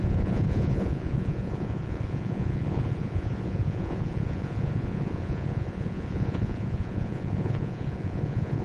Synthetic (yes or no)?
yes